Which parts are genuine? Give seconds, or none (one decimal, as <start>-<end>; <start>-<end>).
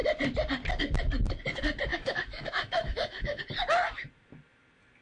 0.0-1.9; 3.4-5.0